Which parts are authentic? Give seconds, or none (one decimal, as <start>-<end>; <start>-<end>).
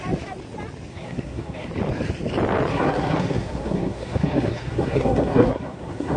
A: 0.0-0.9; 1.7-2.7